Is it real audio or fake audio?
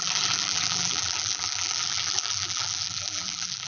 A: fake